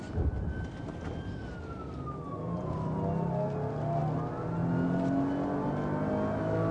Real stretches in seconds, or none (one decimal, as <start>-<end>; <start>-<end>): 0.0-6.7